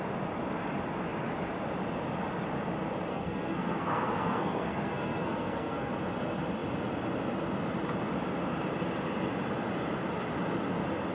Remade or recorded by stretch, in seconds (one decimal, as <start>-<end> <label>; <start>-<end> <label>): 0.0-3.1 recorded; 3.1-5.9 remade; 5.9-11.1 recorded